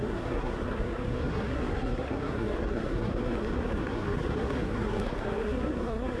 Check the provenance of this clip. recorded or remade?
remade